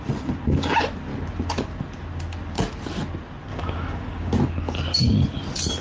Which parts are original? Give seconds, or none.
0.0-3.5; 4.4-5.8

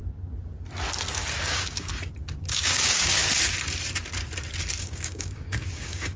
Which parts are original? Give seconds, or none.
0.0-1.4; 1.9-2.4; 3.2-4.8

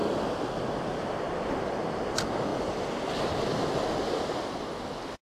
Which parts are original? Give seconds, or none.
0.0-5.4

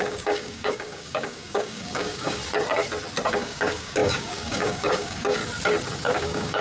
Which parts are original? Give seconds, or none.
2.4-3.3; 5.4-6.1

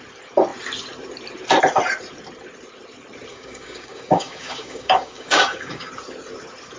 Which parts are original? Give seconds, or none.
0.0-3.3; 5.9-6.8

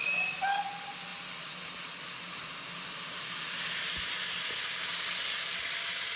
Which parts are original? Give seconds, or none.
0.0-6.2